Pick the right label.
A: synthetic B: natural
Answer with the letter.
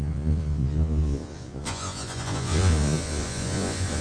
A